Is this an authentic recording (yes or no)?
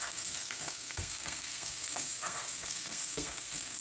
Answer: no